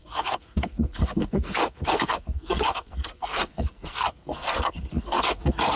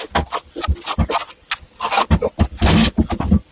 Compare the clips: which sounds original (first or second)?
second